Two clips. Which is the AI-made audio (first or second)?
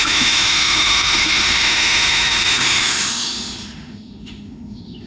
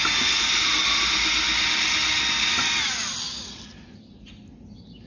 first